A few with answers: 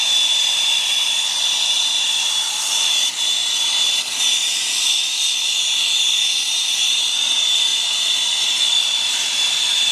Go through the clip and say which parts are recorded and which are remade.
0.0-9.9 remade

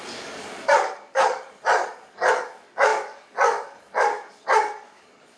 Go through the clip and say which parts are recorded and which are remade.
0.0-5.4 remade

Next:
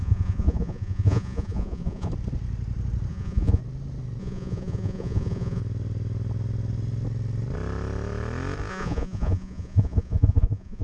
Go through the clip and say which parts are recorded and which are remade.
0.0-2.1 remade; 2.1-3.1 recorded; 3.1-3.6 remade; 3.6-4.2 recorded; 4.2-5.6 remade; 5.6-8.7 recorded; 8.7-10.8 remade